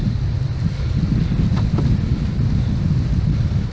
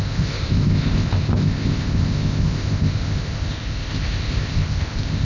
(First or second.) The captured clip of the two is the first